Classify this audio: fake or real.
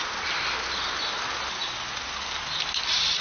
real